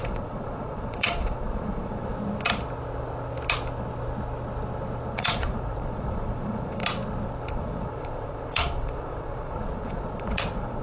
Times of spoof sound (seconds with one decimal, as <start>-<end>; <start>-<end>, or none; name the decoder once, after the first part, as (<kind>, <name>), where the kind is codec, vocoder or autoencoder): 0.0-2.1 (vocoder, Vocos); 5.1-6.8; 7.5-10.8